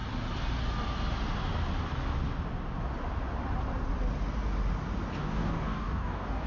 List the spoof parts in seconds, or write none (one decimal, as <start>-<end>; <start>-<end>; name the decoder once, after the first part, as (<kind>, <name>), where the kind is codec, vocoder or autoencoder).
5.2-6.5 (codec, DAC)